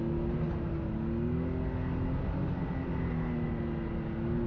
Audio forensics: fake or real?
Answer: real